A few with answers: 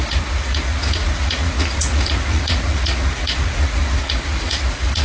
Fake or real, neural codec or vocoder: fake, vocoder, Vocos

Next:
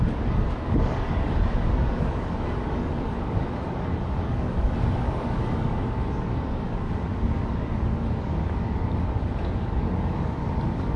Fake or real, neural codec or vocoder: fake, codec, DAC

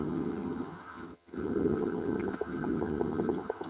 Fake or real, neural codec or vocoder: fake, vocoder, HiFi-GAN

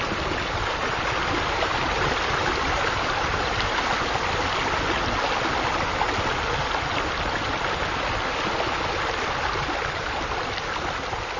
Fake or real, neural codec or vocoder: real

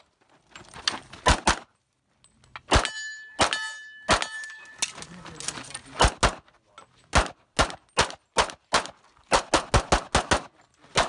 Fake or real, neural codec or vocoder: real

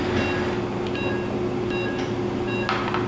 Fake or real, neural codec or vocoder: real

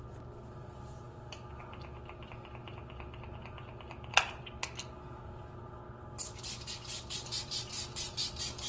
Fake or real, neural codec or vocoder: real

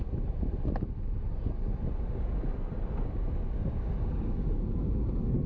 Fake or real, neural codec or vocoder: real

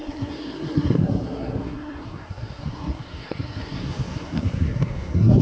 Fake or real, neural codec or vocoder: fake, codec, SNAC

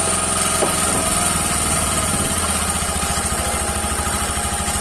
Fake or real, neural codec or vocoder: real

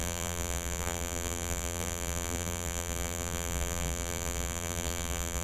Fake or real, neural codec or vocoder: fake, vocoder, BigVGAN v2